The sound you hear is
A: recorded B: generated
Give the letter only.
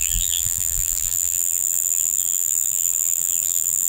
B